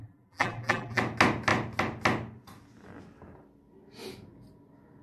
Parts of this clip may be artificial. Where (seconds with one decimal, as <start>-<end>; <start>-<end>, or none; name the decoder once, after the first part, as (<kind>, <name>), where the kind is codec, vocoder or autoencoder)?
0.0-1.0 (vocoder, BigVGAN v2)